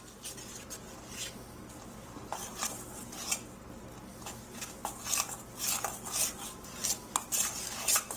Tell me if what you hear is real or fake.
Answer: real